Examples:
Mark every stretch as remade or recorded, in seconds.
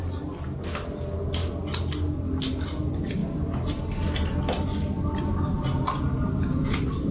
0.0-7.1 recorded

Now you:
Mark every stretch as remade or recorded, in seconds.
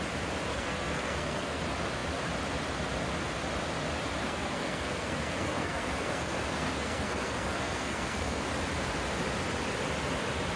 0.0-0.5 recorded; 0.5-1.6 remade; 1.6-4.2 recorded; 4.2-8.5 remade; 8.5-10.6 recorded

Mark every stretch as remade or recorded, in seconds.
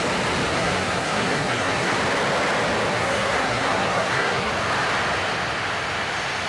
0.0-0.5 recorded; 0.5-2.0 remade; 2.0-2.9 recorded; 2.9-4.5 remade; 4.5-6.5 recorded